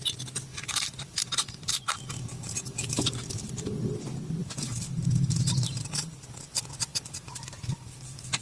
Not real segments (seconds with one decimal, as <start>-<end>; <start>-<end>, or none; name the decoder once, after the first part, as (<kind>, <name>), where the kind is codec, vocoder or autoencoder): 0.5-3.9 (vocoder, BigVGAN v2); 4.4-6.0; 6.9-8.4